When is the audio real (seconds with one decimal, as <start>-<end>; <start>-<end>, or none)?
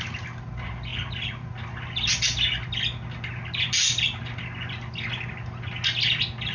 0.0-6.5